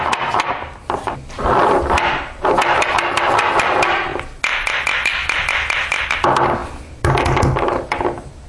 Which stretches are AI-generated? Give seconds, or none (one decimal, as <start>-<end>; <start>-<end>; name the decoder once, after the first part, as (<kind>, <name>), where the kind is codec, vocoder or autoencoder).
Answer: none